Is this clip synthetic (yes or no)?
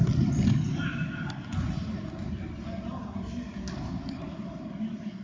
no